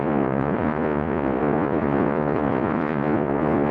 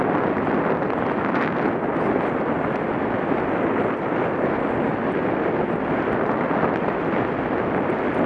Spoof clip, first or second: first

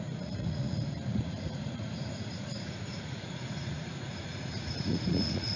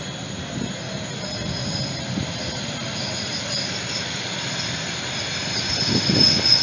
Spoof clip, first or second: first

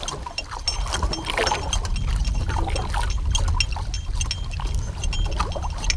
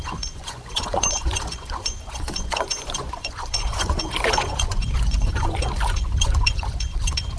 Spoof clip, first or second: second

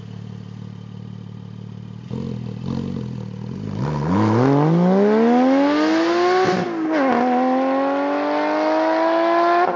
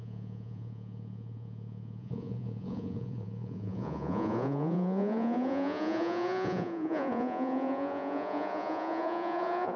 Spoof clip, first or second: second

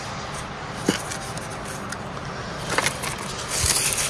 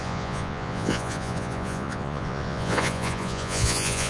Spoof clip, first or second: second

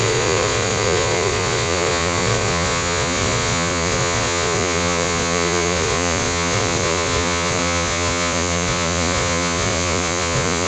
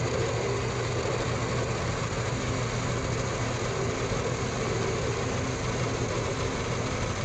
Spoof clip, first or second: first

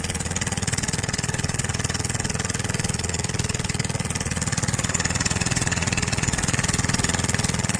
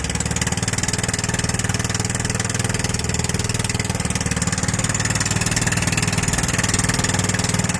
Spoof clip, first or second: first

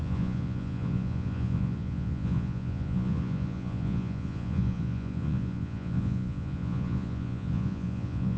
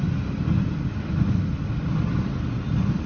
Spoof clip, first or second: first